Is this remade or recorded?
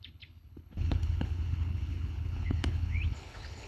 remade